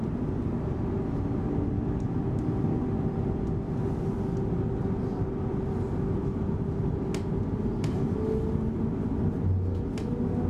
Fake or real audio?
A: real